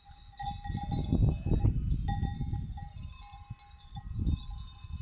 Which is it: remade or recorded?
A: recorded